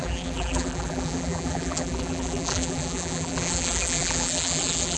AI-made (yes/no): yes